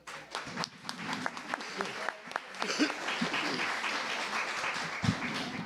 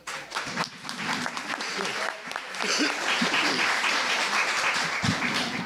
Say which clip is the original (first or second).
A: first